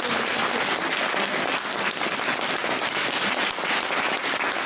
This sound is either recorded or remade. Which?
recorded